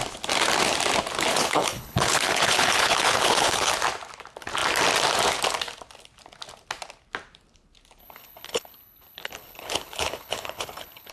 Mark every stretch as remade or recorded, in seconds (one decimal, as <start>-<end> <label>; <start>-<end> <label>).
0.0-1.3 recorded; 1.3-3.7 remade; 3.7-8.0 recorded; 8.0-11.1 remade